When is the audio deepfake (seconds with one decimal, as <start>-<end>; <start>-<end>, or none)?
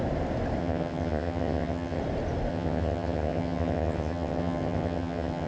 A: 0.6-2.0; 2.5-5.5